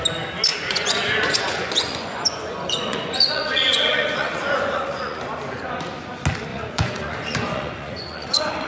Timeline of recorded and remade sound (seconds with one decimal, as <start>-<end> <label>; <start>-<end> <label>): 0.0-0.5 recorded; 0.5-5.2 remade; 5.2-6.5 recorded; 6.5-8.7 remade